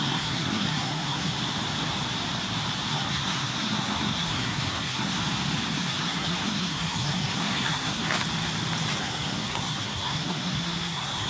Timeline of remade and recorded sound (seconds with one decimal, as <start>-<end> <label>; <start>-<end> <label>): 0.0-1.4 remade; 1.4-2.9 recorded; 2.9-5.2 remade; 5.2-5.7 recorded; 5.7-8.0 remade; 8.0-9.0 recorded; 9.0-11.3 remade